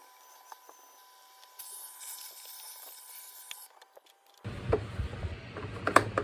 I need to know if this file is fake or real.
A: real